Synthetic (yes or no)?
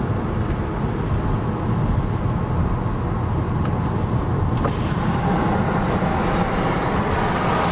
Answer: no